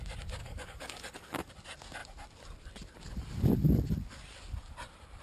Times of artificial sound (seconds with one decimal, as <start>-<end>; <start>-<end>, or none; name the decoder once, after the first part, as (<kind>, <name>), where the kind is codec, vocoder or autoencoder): 0.4-1.5 (codec, DAC)